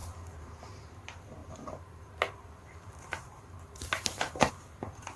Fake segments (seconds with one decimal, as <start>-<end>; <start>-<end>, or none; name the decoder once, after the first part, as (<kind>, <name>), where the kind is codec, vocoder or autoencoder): 0.0-0.6 (vocoder, BigVGAN v2); 1.4-4.5